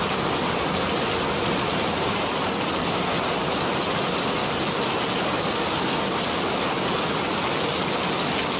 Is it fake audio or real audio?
real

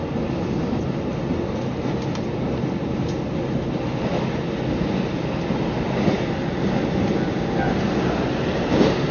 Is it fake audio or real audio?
real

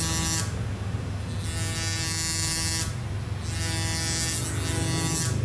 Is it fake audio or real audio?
real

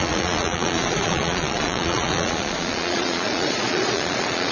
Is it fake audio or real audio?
fake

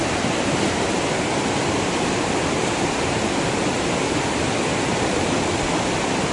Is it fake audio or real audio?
real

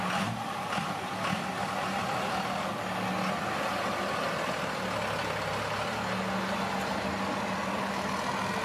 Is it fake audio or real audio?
real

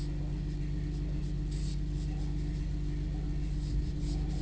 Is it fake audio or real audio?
real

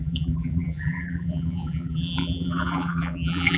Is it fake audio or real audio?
fake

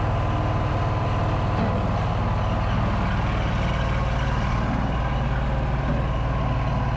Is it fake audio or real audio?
real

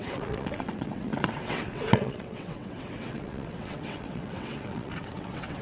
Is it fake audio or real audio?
fake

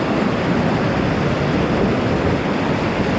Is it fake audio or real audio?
real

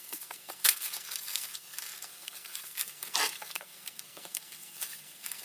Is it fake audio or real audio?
fake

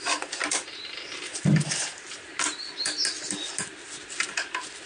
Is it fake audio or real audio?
real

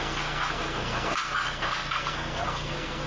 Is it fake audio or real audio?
fake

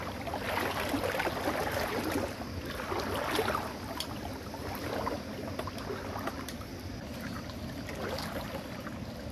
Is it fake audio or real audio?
real